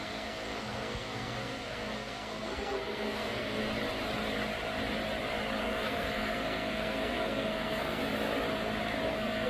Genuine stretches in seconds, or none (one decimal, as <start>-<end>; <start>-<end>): 3.6-5.6; 8.0-9.1